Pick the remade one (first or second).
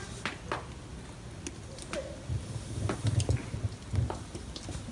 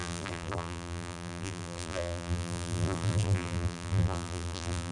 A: second